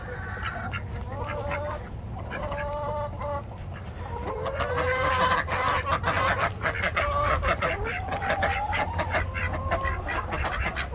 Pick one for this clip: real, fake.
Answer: real